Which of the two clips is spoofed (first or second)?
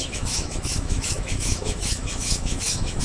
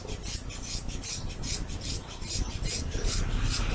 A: first